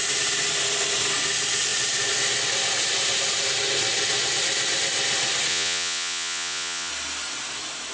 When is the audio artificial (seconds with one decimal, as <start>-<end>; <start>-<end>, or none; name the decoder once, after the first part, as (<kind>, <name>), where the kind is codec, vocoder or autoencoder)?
5.5-6.9 (vocoder, Vocos)